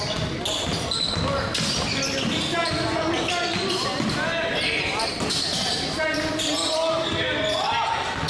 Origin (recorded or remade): recorded